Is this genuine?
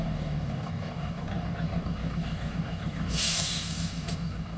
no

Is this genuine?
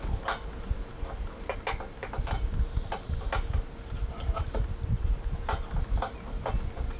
yes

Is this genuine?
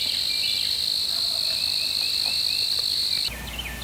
yes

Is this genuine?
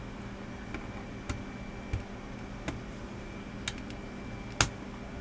yes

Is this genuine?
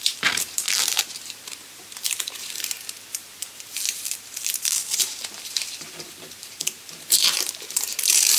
no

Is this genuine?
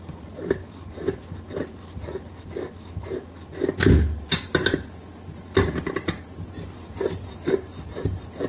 yes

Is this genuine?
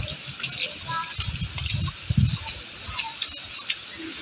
yes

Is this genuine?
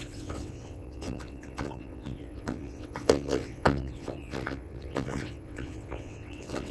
no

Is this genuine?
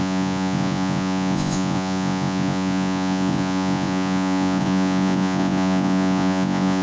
no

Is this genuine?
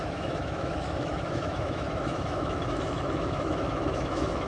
no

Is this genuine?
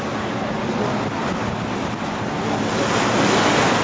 yes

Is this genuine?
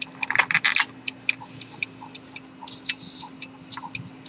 yes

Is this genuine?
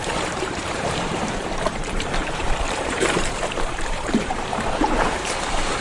no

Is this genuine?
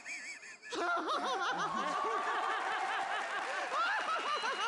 yes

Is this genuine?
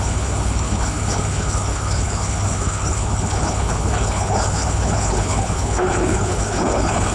no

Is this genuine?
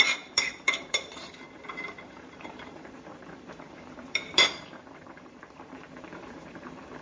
no